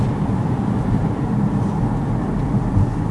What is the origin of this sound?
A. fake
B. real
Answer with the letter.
A